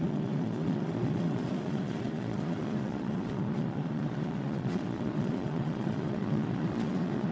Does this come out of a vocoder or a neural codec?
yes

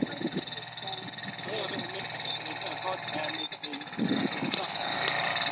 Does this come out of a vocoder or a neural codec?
no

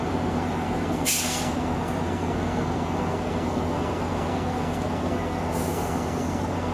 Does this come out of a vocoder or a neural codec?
yes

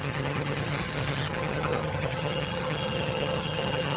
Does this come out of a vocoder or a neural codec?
yes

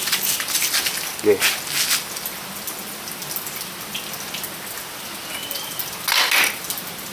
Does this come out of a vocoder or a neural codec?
no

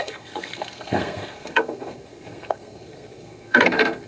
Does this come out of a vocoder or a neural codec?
yes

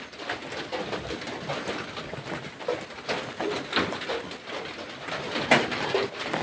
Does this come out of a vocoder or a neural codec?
no